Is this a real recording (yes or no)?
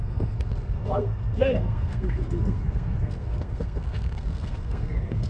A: no